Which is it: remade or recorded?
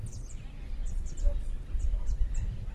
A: recorded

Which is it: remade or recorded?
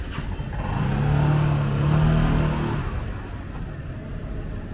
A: recorded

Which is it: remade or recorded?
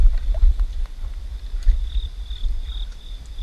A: remade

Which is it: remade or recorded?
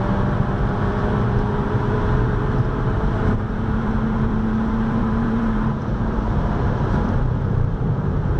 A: remade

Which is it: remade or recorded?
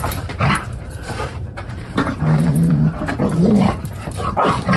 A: remade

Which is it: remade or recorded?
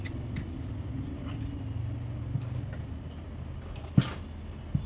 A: recorded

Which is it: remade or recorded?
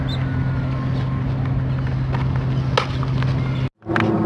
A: recorded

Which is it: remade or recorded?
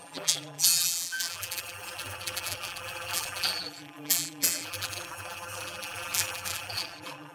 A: remade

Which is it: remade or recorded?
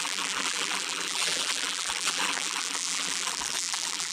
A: remade